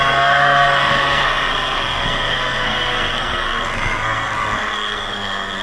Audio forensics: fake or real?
fake